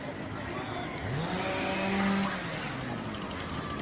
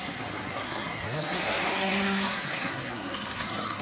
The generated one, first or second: second